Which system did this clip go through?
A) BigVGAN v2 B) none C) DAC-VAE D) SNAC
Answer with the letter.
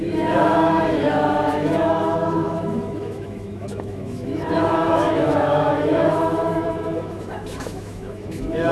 C